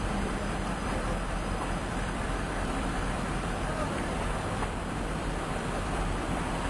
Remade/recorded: remade